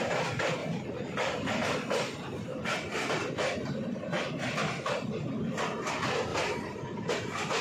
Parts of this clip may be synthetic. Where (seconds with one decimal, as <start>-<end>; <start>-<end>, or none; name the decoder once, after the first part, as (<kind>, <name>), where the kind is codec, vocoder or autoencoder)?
0.6-4.9 (vocoder, BigVGAN v2); 6.3-7.1